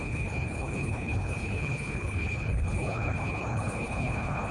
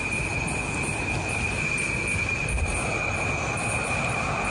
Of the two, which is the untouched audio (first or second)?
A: second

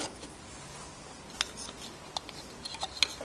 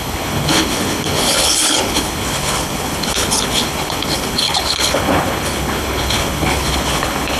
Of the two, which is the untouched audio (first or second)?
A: first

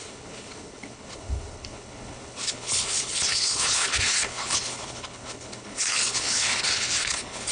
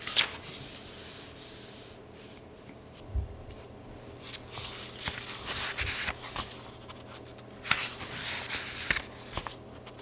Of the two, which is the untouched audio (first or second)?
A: second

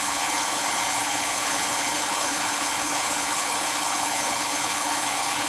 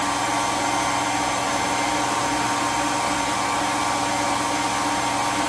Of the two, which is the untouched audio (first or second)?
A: second